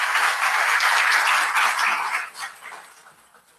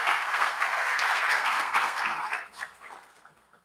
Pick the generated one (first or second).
second